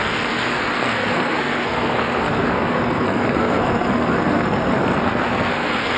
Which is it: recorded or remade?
remade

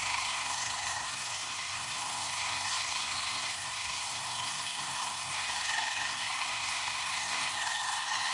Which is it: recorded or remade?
remade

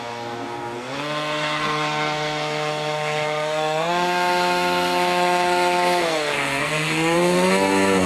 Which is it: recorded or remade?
remade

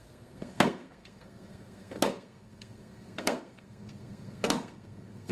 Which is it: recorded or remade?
remade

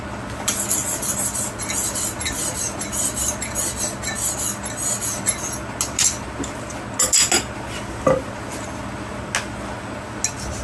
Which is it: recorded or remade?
recorded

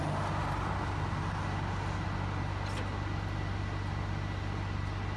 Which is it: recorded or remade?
recorded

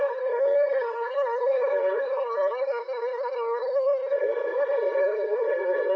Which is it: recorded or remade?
remade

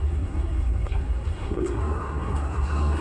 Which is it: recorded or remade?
remade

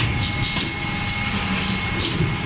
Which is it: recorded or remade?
recorded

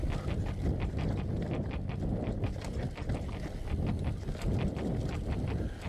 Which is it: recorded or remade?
recorded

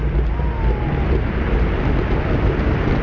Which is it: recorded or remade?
recorded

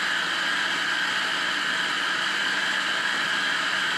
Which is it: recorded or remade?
recorded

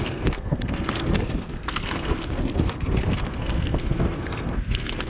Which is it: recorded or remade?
remade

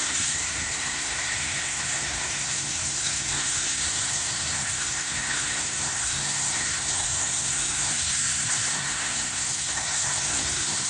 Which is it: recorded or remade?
remade